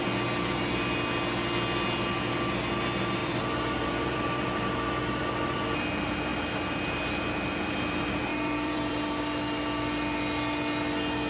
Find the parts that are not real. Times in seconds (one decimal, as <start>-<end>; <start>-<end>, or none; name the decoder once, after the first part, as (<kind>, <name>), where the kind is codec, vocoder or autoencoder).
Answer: 3.2-5.6 (vocoder, BigVGAN v2); 8.3-9.0